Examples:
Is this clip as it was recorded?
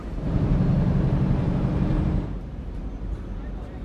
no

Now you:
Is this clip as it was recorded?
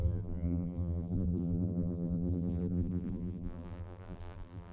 no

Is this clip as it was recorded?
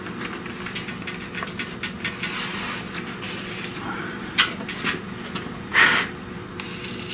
yes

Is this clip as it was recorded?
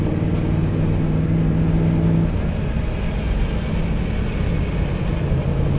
yes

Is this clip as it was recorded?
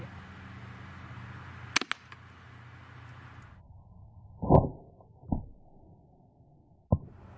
yes